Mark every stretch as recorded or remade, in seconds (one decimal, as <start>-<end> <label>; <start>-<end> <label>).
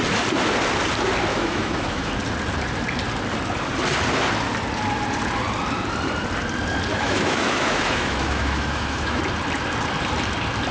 0.0-1.3 recorded; 1.3-2.1 remade; 2.1-6.9 recorded; 6.9-9.2 remade; 9.2-10.7 recorded